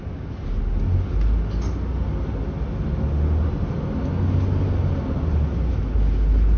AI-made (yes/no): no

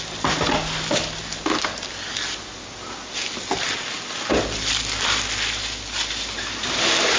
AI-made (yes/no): no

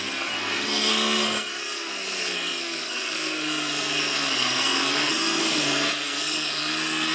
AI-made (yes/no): yes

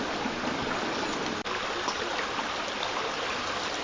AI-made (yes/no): no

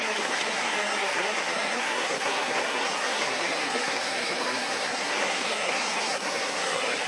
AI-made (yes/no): yes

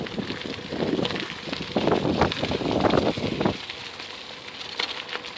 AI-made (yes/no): no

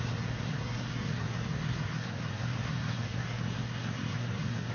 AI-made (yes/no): yes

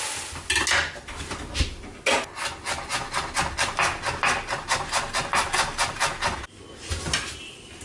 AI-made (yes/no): no